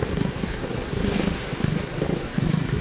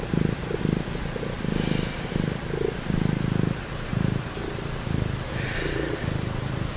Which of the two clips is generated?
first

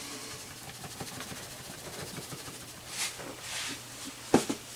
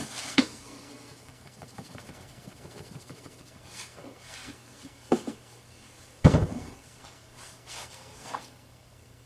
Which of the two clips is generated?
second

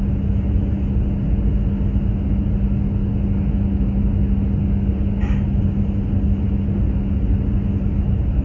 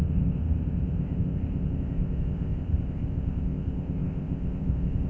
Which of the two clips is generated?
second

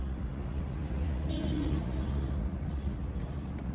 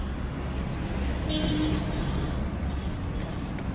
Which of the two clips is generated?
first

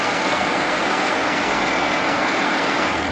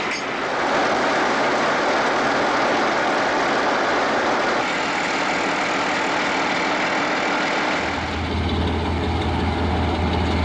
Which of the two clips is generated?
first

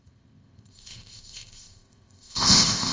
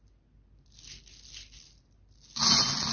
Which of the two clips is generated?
first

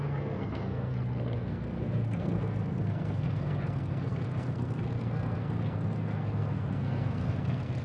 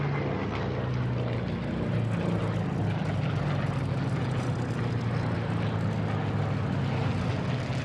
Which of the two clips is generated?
first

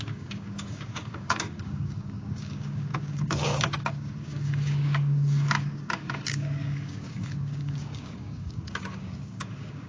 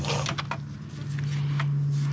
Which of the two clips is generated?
first